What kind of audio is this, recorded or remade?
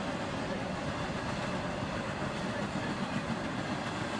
recorded